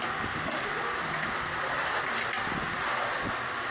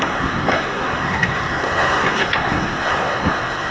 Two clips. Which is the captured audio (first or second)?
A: first